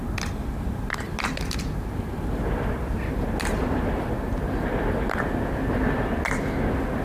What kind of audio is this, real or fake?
real